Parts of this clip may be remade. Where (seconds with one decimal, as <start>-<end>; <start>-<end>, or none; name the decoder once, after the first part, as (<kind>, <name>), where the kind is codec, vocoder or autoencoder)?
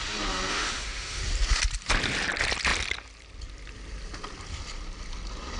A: 0.5-1.2 (autoencoder, DAC-VAE)